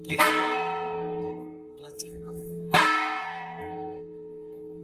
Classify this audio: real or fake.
fake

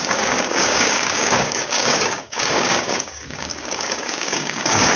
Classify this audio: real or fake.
fake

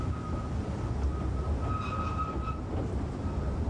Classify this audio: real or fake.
real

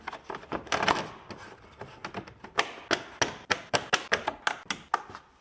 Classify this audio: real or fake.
real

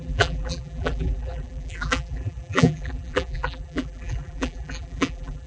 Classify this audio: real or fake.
fake